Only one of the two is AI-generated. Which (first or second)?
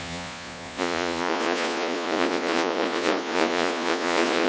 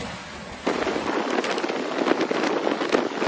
first